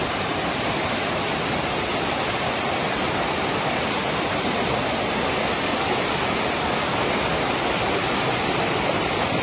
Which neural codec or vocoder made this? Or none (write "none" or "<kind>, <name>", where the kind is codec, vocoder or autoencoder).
none